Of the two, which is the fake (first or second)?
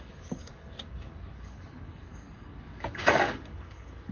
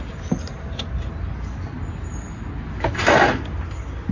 first